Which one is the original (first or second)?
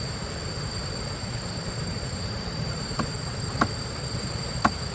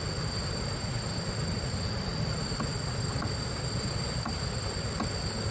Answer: second